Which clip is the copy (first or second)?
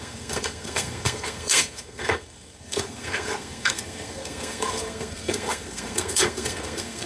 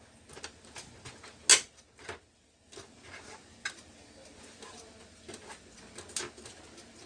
first